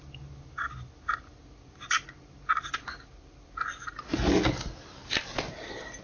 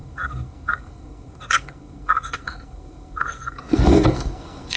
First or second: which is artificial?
second